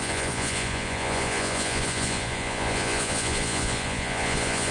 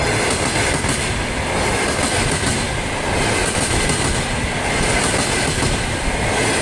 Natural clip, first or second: second